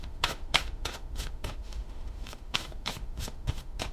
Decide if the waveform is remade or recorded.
remade